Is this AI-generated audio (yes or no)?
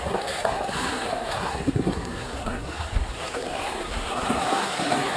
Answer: yes